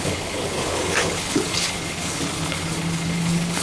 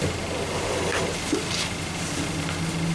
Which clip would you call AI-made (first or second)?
first